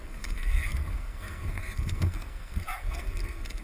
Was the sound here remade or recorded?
remade